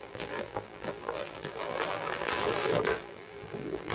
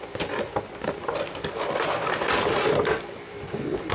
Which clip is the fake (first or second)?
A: first